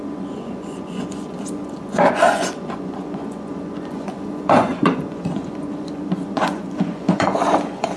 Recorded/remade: remade